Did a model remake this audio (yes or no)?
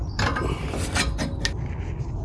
no